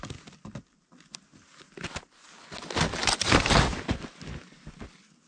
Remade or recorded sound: recorded